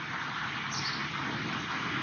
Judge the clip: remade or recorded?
recorded